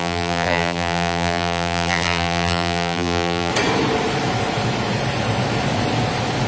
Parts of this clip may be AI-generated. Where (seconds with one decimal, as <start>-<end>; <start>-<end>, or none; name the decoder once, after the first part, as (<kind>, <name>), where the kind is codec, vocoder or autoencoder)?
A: 0.0-3.5 (vocoder, BigVGAN v2)